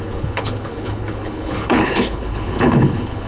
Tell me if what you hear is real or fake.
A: fake